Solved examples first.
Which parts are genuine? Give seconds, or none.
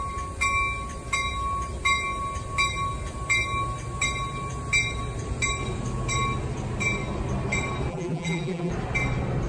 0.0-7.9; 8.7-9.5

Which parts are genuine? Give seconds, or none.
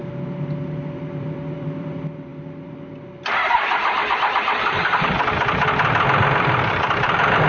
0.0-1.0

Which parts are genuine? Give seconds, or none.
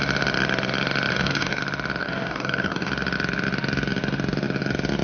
0.0-1.1; 1.6-2.0; 2.9-5.0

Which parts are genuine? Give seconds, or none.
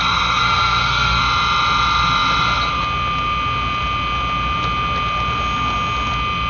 1.2-6.5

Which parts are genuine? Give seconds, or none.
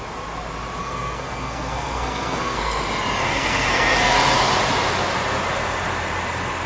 0.0-0.8; 2.8-3.2; 4.1-6.7